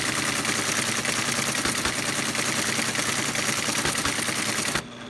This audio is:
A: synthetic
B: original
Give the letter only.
B